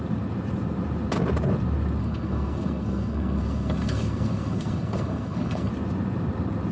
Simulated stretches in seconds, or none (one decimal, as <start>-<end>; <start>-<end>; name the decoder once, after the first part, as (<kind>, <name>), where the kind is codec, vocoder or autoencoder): 2.0-5.7 (codec, SNAC)